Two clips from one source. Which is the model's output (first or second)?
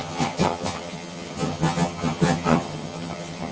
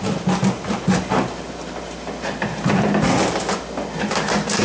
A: first